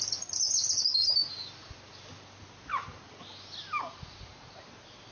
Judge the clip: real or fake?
real